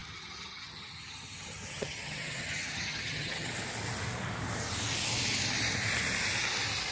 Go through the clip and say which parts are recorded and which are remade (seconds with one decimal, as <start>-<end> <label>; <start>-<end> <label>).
0.0-3.5 remade; 3.5-6.9 recorded